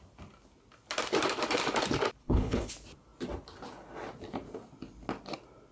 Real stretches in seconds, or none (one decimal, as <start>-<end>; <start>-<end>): 0.0-2.2; 2.7-5.7